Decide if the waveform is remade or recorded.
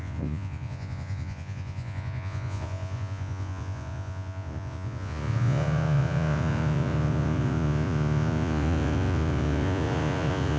remade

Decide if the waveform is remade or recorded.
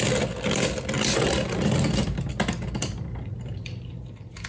recorded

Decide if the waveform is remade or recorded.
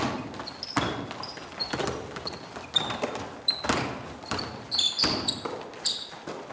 recorded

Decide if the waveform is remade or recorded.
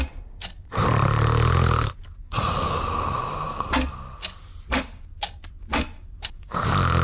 recorded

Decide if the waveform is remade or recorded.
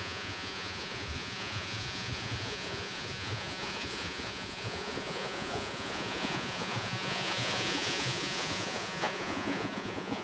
remade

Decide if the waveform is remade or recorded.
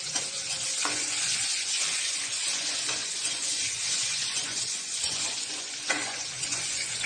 remade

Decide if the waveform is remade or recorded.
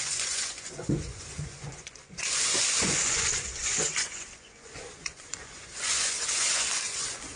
remade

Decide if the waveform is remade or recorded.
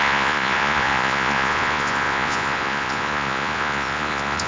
remade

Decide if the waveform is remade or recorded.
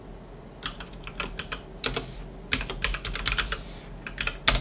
recorded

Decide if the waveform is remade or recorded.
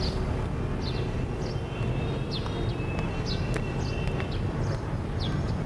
recorded